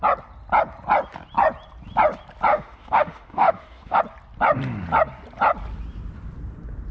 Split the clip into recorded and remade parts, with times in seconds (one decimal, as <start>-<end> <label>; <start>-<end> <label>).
0.0-2.5 recorded; 2.5-4.0 remade; 4.0-6.9 recorded